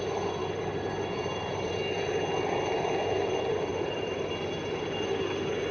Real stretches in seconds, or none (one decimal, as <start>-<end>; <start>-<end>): 0.0-0.4; 1.7-3.7; 4.3-5.7